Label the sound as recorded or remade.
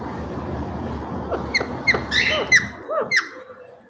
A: recorded